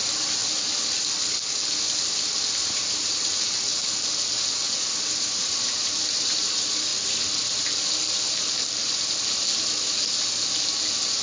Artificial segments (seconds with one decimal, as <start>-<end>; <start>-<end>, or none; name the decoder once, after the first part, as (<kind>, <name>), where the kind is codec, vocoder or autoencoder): 0.0-0.4 (vocoder, BigVGAN v2); 2.6-3.7; 5.2-6.9

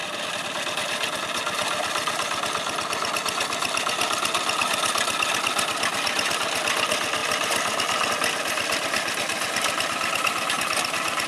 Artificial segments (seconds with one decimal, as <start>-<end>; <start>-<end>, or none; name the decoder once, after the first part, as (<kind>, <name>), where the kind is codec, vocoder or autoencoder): none